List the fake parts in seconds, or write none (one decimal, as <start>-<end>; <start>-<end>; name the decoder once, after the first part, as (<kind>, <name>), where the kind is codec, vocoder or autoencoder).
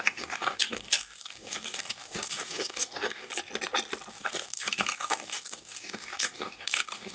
0.0-3.3 (codec, DAC); 4.1-7.1